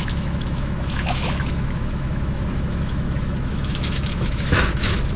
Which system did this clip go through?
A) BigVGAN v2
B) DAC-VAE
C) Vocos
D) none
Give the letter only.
B